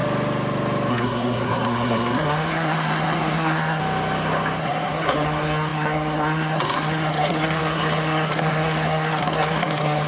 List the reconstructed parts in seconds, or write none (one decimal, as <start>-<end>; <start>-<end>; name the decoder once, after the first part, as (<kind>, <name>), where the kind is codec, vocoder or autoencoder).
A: 0.9-3.8 (codec, SNAC); 4.6-10.1